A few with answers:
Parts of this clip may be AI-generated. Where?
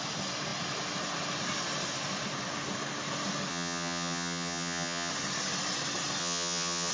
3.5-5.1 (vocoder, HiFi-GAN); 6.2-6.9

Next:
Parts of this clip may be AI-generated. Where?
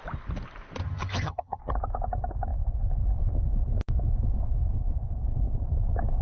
0.8-1.6 (vocoder, HiFi-GAN)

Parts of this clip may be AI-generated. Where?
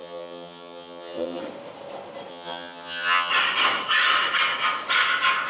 0.0-1.4 (vocoder, HiFi-GAN); 2.3-3.3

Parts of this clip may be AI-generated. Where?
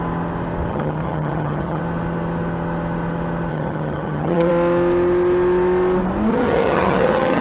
0.7-1.8 (vocoder, HiFi-GAN); 3.5-4.5; 6.3-7.4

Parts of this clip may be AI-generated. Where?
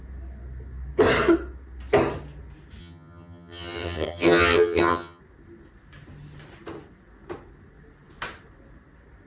2.8-5.2 (vocoder, HiFi-GAN)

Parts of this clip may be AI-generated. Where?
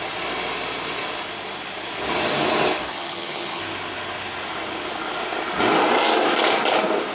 2.9-3.6 (vocoder, HiFi-GAN)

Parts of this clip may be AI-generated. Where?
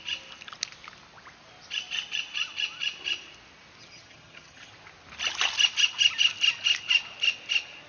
3.8-4.7 (vocoder, HiFi-GAN)